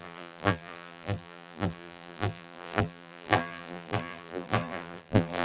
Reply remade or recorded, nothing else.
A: remade